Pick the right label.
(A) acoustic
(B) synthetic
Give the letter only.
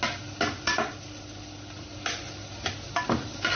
A